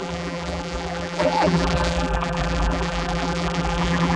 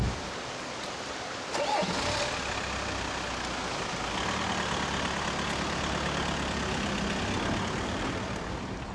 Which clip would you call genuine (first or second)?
second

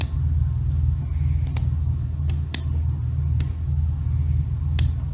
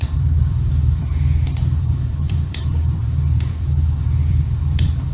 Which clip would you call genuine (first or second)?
first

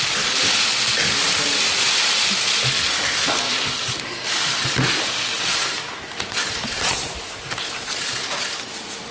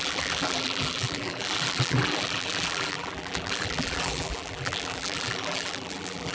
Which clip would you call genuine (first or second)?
first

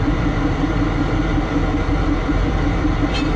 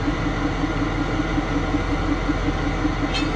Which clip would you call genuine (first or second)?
second